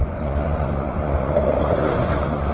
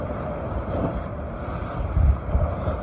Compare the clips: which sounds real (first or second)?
second